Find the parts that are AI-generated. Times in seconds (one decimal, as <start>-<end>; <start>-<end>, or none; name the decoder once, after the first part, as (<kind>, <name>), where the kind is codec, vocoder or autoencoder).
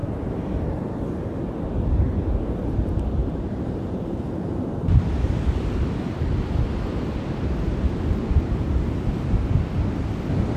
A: 0.0-0.6 (vocoder, BigVGAN v2); 3.2-5.9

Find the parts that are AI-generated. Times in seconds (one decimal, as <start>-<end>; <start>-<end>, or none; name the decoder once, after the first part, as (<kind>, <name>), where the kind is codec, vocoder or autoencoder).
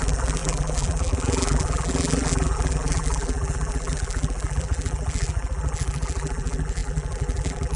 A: 0.0-7.8 (vocoder, BigVGAN v2)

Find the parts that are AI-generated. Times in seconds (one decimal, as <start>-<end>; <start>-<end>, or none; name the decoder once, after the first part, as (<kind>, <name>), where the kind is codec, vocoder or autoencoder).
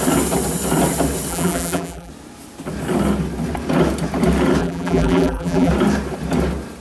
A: 1.3-2.1 (vocoder, BigVGAN v2); 4.6-5.7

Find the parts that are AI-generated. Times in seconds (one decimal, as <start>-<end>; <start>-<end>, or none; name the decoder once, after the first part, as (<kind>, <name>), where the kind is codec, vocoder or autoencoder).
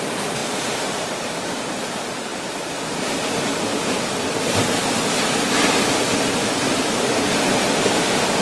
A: 6.4-7.1 (vocoder, BigVGAN v2)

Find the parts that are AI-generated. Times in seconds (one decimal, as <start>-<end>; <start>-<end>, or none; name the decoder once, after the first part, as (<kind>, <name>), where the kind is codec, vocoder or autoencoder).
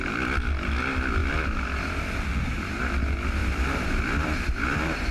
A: 3.4-5.1 (vocoder, BigVGAN v2)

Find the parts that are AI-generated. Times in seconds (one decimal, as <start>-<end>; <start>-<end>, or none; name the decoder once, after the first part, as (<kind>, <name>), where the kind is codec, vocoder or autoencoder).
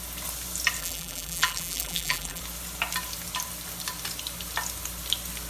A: 0.8-2.4 (vocoder, BigVGAN v2)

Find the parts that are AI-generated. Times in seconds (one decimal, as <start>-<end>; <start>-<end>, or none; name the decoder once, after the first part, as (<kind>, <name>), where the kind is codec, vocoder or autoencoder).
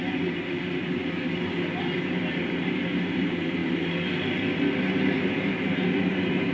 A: 0.0-1.0 (vocoder, BigVGAN v2); 2.0-3.6; 5.3-6.5